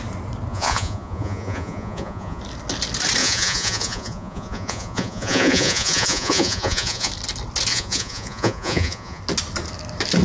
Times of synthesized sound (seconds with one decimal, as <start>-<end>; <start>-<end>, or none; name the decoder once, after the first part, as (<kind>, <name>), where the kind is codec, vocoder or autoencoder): 0.5-2.4 (vocoder, Vocos); 3.2-7.1; 7.7-9.2